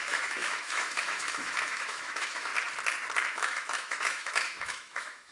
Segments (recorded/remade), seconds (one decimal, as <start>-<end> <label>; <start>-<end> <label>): 0.0-2.5 remade; 2.5-3.3 recorded; 3.3-5.3 remade